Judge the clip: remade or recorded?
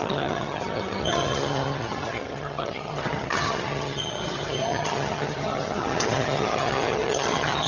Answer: remade